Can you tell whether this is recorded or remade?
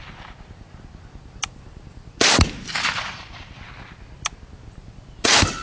recorded